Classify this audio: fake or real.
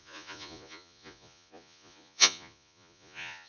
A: fake